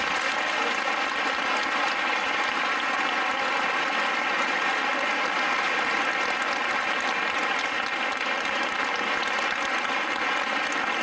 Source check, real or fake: real